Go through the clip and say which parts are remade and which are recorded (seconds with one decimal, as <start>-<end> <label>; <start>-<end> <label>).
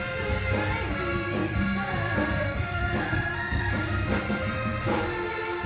0.0-1.4 recorded; 1.4-4.3 remade; 4.3-5.7 recorded